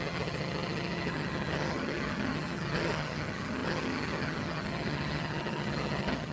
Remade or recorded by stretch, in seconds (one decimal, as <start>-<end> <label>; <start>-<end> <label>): 0.0-6.3 remade